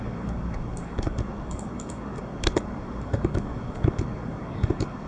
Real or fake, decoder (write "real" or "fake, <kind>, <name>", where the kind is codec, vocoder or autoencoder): fake, codec, DAC